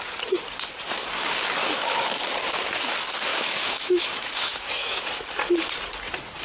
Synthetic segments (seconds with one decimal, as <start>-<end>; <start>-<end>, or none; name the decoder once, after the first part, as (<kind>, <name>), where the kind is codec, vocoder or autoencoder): 1.6-2.2 (autoencoder, DAC-VAE); 3.3-5.0